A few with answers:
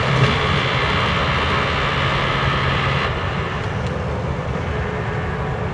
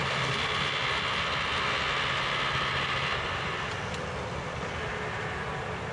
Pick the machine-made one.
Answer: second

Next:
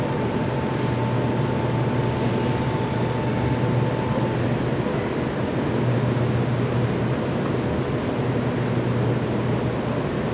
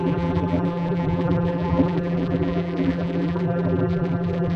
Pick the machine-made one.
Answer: second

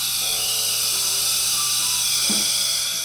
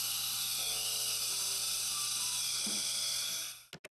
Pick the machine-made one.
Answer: first